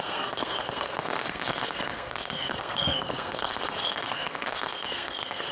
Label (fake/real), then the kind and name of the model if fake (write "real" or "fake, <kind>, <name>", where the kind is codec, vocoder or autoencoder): fake, codec, SNAC